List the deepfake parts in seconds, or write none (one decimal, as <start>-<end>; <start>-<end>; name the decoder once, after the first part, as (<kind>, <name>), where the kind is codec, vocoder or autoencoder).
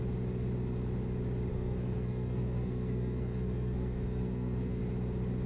1.5-4.8 (codec, SNAC)